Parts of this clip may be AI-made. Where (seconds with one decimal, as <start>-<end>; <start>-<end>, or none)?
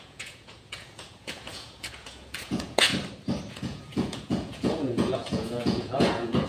0.0-2.9; 3.5-6.5